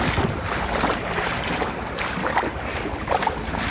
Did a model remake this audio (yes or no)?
yes